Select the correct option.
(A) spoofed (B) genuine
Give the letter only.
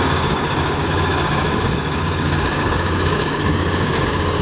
A